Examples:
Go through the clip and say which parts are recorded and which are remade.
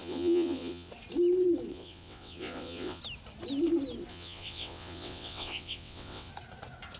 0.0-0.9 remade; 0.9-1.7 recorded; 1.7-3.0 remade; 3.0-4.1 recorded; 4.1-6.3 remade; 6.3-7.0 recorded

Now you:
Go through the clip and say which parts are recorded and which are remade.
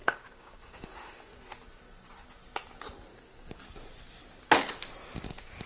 0.0-1.3 remade; 1.3-3.1 recorded; 3.1-3.6 remade; 3.6-5.7 recorded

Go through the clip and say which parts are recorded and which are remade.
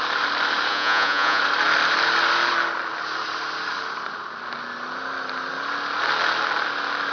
0.0-0.7 recorded; 0.7-1.4 remade; 1.4-7.1 recorded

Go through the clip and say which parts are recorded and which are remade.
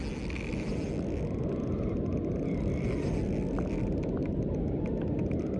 0.0-5.6 recorded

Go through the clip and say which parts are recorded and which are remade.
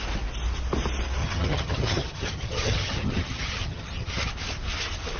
0.0-1.2 recorded; 1.2-4.3 remade; 4.3-5.2 recorded